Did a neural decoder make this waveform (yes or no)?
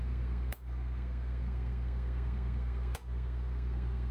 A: yes